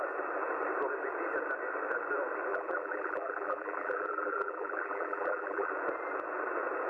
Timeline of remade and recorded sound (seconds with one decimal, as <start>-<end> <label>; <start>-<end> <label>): 0.0-2.5 recorded; 2.5-5.7 remade; 5.7-6.9 recorded